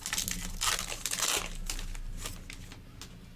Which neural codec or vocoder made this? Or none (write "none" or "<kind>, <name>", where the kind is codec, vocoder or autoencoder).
none